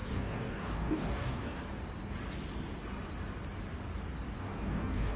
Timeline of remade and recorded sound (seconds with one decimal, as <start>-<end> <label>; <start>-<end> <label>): 0.0-1.6 remade; 1.6-4.4 recorded; 4.4-5.2 remade